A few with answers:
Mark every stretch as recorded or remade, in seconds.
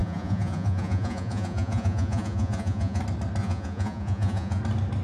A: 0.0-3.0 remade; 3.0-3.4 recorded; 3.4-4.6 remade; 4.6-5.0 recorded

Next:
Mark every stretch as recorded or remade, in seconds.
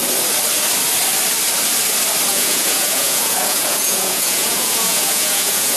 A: 0.0-2.3 recorded; 2.3-5.8 remade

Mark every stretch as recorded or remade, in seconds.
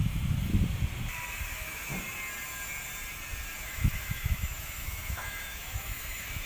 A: 0.0-0.5 remade; 0.5-1.5 recorded; 1.5-1.9 remade; 1.9-3.6 recorded; 3.6-6.5 remade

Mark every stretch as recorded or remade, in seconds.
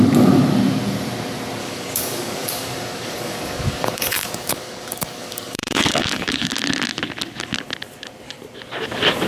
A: 0.0-1.6 recorded; 1.6-6.5 remade; 6.5-9.3 recorded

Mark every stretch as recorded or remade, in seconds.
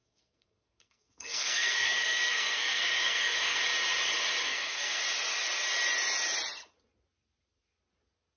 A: 0.0-3.6 remade; 3.6-4.5 recorded; 4.5-5.0 remade; 5.0-8.4 recorded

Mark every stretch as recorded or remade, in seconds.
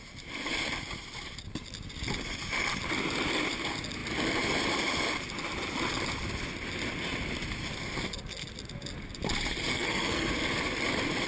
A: 0.0-9.7 recorded; 9.7-10.3 remade; 10.3-11.3 recorded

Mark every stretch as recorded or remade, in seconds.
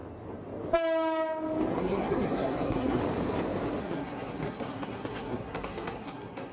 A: 0.0-1.7 recorded; 1.7-3.0 remade; 3.0-3.8 recorded; 3.8-6.5 remade